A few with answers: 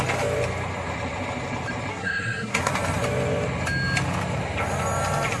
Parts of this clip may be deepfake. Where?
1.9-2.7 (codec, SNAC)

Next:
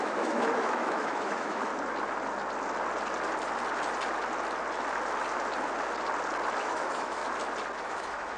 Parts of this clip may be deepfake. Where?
0.0-1.7 (autoencoder, DAC-VAE); 6.6-7.2; 7.8-8.4

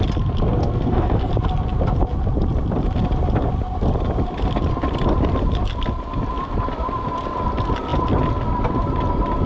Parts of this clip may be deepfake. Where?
0.6-1.3 (codec, SNAC)

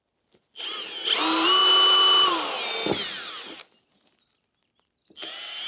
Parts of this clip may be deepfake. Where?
none

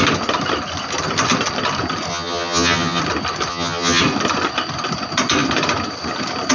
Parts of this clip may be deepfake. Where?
2.1-3.0 (vocoder, HiFi-GAN); 3.5-4.0

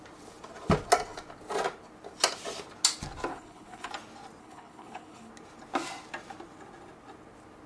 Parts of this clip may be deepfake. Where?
3.3-3.9 (codec, HILCodec); 4.4-5.3